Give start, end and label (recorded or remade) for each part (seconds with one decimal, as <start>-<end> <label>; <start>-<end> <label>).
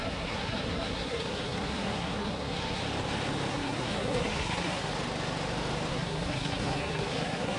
0.0-2.8 remade; 2.8-3.5 recorded; 3.5-4.9 remade; 4.9-5.9 recorded; 5.9-7.6 remade